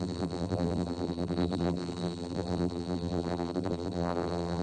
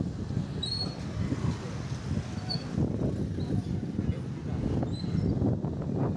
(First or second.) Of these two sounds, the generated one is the first